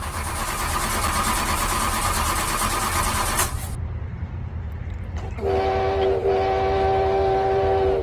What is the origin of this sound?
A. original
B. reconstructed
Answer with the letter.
A